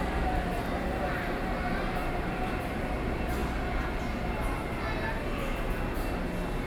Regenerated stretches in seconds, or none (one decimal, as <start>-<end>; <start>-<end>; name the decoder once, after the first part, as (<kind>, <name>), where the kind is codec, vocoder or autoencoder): 2.0-2.5 (vocoder, BigVGAN v2)